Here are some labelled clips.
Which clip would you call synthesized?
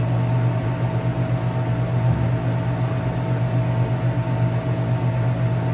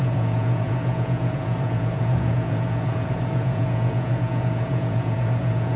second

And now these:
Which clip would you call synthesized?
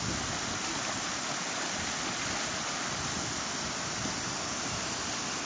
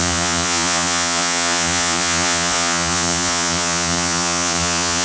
second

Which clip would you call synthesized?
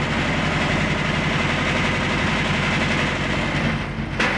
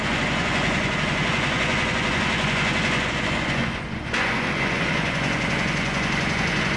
second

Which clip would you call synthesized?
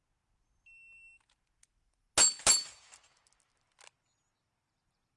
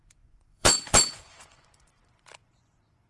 second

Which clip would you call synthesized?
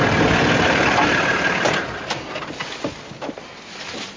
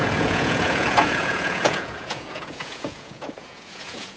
second